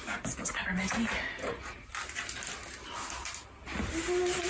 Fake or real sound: real